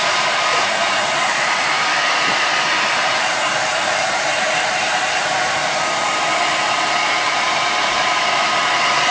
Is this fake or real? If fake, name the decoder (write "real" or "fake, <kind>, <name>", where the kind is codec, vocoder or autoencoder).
fake, vocoder, BigVGAN v2